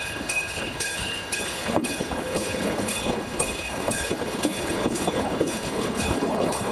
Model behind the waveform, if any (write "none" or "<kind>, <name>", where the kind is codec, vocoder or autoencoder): codec, HILCodec